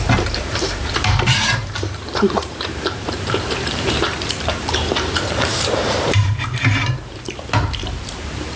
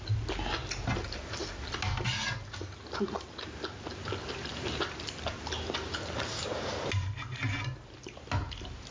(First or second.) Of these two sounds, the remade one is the first